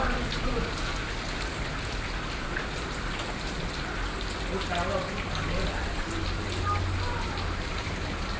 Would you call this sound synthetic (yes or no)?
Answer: no